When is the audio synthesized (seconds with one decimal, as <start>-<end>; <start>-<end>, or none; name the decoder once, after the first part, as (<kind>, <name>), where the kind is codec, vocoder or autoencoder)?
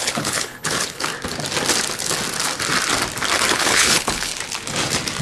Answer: 0.0-1.1 (codec, HILCodec); 3.5-4.3